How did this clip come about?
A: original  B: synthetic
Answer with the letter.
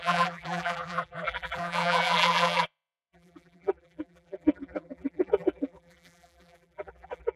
B